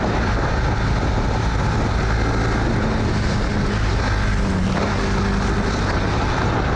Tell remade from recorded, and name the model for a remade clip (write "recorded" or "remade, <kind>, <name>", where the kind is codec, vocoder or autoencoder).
recorded